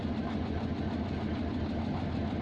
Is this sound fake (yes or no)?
no